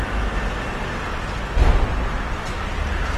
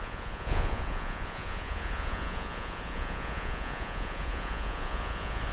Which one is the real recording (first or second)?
first